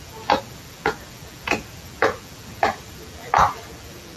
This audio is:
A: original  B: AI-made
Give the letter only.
B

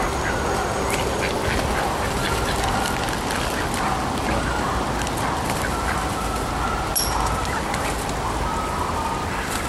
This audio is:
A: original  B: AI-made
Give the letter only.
A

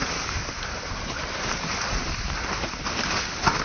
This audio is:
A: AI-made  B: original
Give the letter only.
B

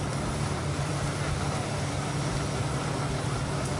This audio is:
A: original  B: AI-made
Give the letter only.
A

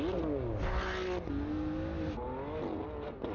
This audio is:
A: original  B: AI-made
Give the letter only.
A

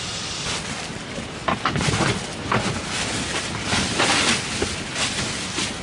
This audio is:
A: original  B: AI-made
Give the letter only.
A